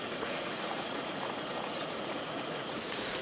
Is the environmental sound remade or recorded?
remade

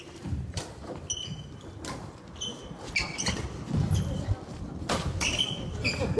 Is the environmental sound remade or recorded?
recorded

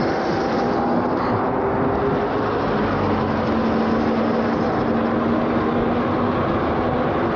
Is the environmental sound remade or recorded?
recorded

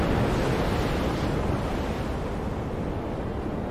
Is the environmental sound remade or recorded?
recorded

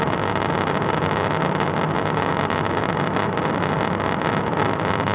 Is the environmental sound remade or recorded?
recorded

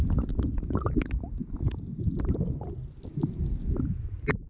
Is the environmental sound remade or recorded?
recorded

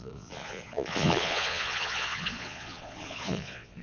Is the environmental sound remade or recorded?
remade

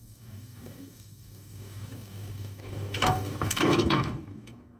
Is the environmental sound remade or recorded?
remade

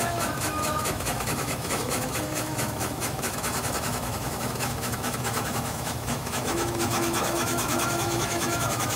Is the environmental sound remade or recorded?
remade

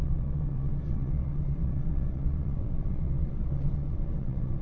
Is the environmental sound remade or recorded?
remade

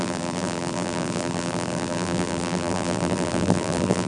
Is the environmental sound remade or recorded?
remade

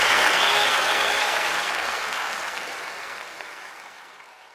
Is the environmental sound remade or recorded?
remade